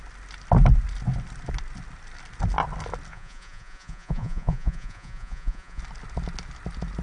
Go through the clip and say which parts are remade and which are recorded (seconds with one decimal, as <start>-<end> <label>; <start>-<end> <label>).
0.0-3.1 recorded; 3.1-5.8 remade; 5.8-7.0 recorded

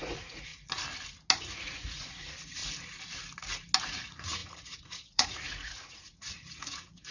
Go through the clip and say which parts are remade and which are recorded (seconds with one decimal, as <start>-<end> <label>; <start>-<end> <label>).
0.0-0.5 remade; 0.5-1.4 recorded; 1.4-2.6 remade; 2.6-3.8 recorded; 3.8-7.1 remade

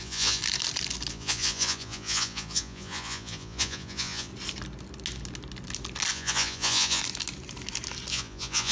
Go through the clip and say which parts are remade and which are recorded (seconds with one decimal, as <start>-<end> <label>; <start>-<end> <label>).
0.0-0.4 remade; 0.4-1.1 recorded; 1.1-4.3 remade; 4.3-6.1 recorded; 6.1-7.0 remade; 7.0-8.1 recorded; 8.1-8.7 remade

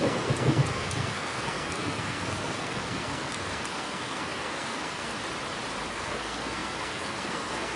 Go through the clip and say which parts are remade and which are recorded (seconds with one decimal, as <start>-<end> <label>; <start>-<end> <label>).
0.0-5.2 remade; 5.2-5.9 recorded; 5.9-7.8 remade

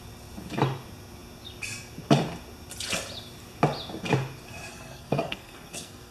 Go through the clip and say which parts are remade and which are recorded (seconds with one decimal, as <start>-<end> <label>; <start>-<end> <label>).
0.0-4.7 recorded; 4.7-6.1 remade

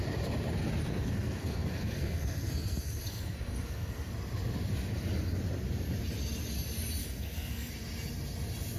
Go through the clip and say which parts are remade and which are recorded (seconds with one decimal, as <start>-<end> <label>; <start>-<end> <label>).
0.0-0.8 recorded; 0.8-4.1 remade; 4.1-7.0 recorded; 7.0-7.7 remade; 7.7-8.8 recorded

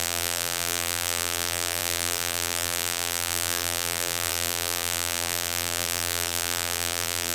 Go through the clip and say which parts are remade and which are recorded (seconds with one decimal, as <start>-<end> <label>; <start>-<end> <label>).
0.0-7.3 remade